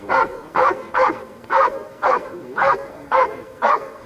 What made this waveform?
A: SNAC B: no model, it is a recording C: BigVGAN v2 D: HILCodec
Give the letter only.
A